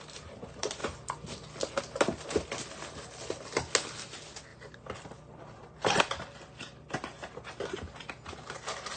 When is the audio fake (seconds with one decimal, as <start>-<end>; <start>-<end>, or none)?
4.5-6.0